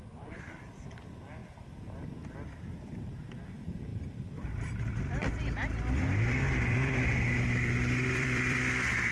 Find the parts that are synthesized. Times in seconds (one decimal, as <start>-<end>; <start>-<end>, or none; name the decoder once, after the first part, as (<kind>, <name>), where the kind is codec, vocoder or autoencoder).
3.9-9.1 (vocoder, BigVGAN v2)